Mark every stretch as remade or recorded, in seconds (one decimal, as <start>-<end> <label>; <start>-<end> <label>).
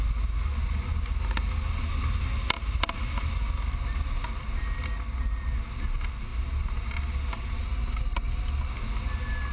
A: 0.0-9.5 recorded